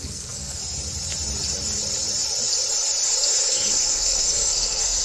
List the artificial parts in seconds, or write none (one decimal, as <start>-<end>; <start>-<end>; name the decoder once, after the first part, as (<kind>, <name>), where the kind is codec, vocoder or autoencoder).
0.0-0.6 (codec, SNAC); 3.5-5.0